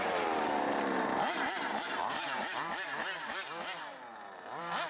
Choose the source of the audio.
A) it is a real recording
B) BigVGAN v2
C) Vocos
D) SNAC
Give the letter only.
B